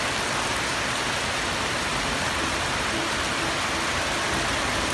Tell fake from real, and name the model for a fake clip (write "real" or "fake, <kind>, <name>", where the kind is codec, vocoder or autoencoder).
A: real